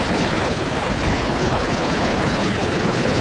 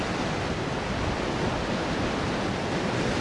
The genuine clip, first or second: second